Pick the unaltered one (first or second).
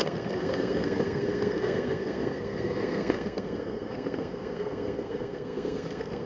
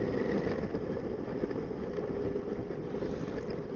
second